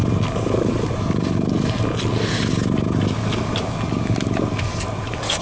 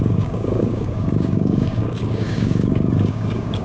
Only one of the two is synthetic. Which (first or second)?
second